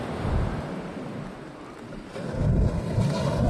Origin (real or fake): real